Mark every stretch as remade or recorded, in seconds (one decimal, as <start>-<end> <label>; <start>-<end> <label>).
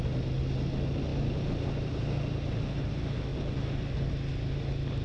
0.0-3.3 recorded; 3.3-3.9 remade; 3.9-5.0 recorded